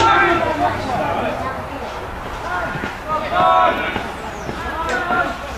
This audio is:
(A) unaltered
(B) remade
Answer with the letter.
A